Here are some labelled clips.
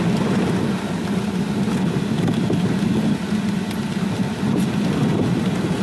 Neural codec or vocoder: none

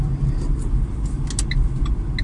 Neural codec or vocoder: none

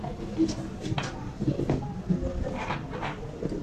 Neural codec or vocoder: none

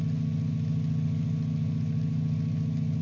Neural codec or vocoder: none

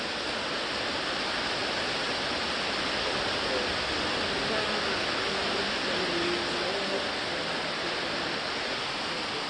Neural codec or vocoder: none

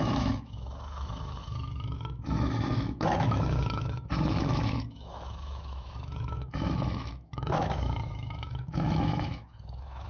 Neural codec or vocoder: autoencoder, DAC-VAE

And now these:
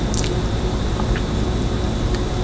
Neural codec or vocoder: none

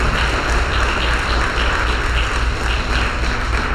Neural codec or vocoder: none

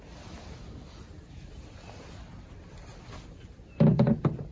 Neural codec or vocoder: none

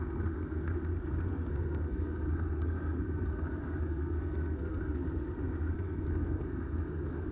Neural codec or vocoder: codec, SNAC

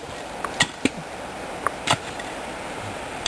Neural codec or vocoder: vocoder, BigVGAN v2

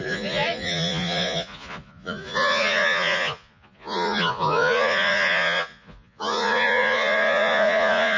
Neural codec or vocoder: vocoder, Vocos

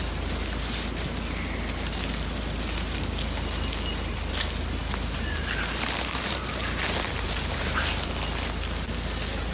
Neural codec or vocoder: none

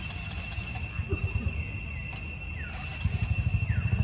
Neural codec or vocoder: none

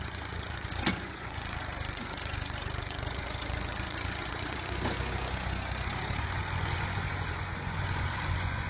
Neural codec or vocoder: vocoder, Vocos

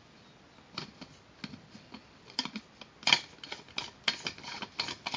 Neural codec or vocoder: none